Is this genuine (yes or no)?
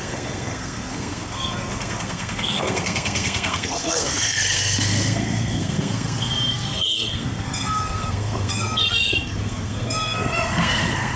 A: no